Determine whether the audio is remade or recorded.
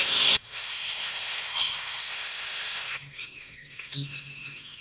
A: remade